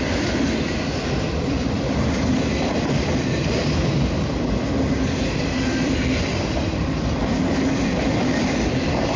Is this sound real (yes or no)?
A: no